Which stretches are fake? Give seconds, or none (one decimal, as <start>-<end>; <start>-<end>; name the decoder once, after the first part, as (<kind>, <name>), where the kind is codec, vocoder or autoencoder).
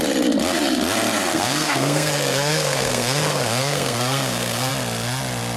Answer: 1.3-4.7 (codec, SNAC)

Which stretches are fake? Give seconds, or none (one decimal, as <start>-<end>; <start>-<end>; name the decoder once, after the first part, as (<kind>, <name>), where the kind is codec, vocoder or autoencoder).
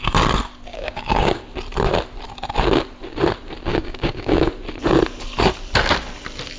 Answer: 0.7-1.4 (codec, DAC); 3.7-4.5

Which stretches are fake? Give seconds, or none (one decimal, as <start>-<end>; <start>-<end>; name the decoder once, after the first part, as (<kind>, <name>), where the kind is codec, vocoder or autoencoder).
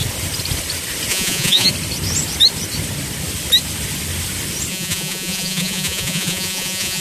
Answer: 1.1-1.7 (vocoder, Vocos); 4.7-7.0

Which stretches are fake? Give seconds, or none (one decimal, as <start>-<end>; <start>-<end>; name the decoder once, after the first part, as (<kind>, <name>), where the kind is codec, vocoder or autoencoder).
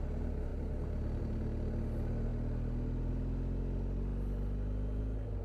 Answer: none